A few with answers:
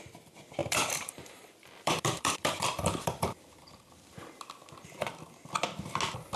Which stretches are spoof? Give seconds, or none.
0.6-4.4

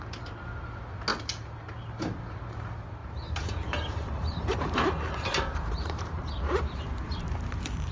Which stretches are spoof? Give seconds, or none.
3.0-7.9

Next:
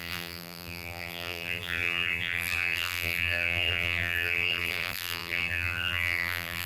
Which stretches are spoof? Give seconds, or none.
0.0-6.7